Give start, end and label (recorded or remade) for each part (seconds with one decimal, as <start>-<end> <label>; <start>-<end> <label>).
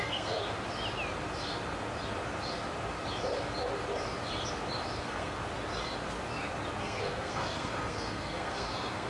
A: 0.0-0.4 remade; 0.4-5.0 recorded; 5.0-5.4 remade; 5.4-6.8 recorded; 6.8-9.1 remade